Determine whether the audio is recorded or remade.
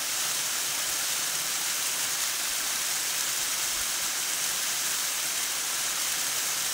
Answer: recorded